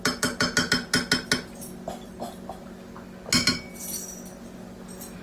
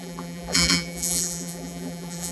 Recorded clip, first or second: first